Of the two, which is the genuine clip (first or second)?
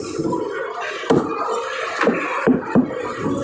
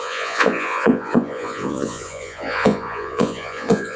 first